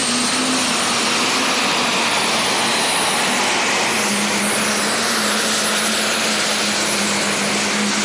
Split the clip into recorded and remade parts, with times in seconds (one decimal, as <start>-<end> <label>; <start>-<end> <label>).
0.0-8.0 recorded